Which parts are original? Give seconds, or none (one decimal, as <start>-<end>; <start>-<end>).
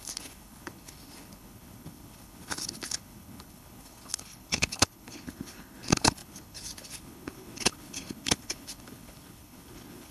none